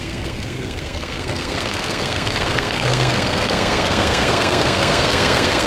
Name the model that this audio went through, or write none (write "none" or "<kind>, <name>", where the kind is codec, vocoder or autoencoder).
codec, SNAC